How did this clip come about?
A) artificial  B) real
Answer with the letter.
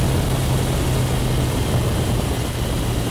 B